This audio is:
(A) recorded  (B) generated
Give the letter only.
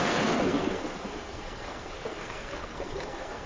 B